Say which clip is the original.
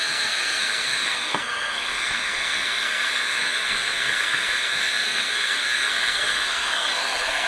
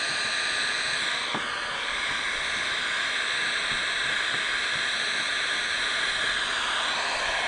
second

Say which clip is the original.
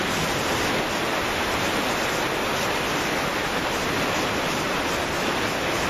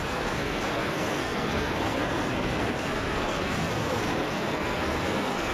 first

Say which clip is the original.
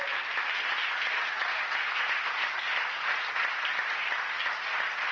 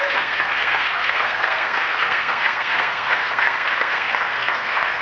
first